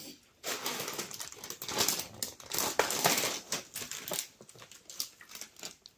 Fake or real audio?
real